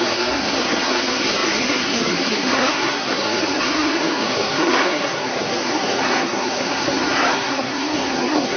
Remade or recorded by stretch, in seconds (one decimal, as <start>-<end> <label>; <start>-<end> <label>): 0.0-8.6 remade